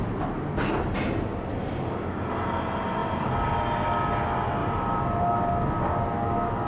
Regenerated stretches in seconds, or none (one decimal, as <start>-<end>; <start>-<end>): 4.6-5.5